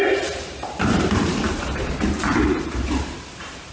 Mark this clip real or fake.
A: fake